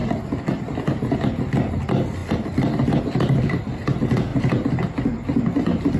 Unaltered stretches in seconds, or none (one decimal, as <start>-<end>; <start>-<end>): 0.0-6.0